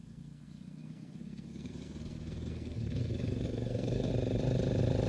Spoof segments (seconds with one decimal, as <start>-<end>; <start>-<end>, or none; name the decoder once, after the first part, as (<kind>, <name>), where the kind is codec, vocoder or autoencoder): 0.0-4.1 (codec, SNAC)